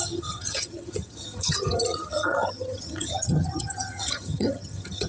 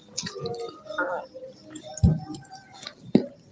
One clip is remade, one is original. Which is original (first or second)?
second